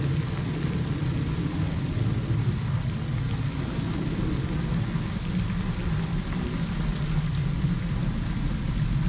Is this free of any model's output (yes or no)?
yes